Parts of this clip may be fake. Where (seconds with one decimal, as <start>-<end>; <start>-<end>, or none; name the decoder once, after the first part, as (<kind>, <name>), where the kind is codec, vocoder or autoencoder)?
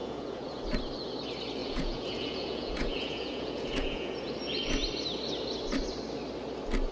0.0-0.6 (vocoder, Vocos); 1.6-4.3